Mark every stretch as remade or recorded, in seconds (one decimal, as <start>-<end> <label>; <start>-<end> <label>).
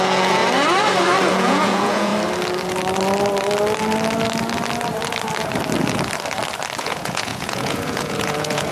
0.0-0.4 remade; 0.4-1.3 recorded; 1.3-2.1 remade; 2.1-6.8 recorded; 6.8-8.7 remade